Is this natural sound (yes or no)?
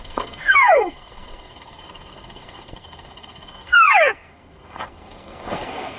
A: no